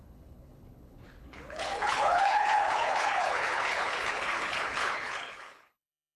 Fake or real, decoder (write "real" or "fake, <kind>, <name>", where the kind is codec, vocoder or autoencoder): fake, codec, HILCodec